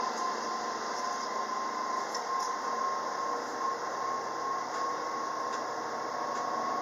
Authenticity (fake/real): real